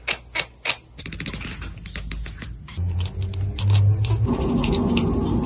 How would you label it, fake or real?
real